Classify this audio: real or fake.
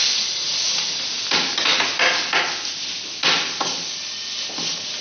real